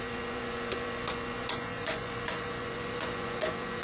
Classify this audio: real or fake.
fake